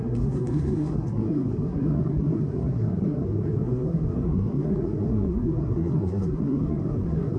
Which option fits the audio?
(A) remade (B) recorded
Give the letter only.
A